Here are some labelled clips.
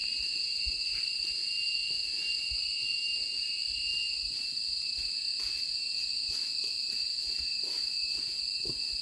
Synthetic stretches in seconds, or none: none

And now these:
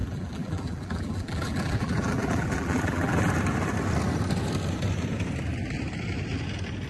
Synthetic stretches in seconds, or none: 0.0-3.3 (vocoder, BigVGAN v2)

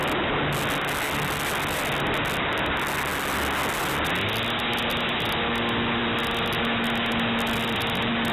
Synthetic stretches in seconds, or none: none

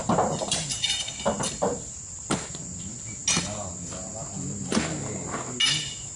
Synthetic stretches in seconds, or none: 0.0-2.5 (vocoder, BigVGAN v2)

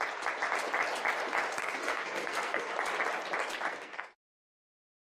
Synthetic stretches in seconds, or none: 1.6-2.7 (codec, SNAC); 3.7-4.2

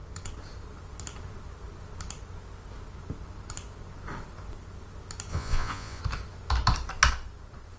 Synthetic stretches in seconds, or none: 5.3-6.0 (vocoder, Vocos)

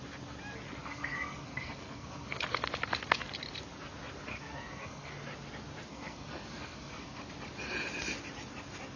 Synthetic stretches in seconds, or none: 0.8-2.4 (codec, SNAC); 4.3-5.1; 5.9-7.2

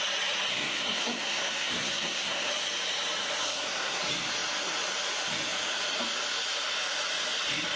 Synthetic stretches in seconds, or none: 0.5-2.5 (codec, SNAC); 3.4-4.0